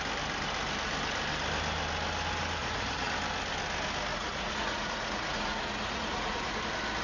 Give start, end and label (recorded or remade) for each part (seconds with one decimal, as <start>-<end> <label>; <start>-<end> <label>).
0.0-2.6 recorded; 2.6-3.1 remade; 3.1-4.1 recorded; 4.1-6.6 remade; 6.6-7.0 recorded